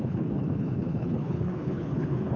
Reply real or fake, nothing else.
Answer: fake